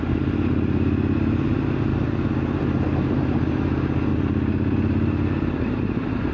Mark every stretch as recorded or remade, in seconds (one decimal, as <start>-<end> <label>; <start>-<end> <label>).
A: 0.0-4.1 recorded; 4.1-6.3 remade